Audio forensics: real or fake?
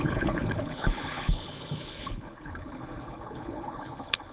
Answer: fake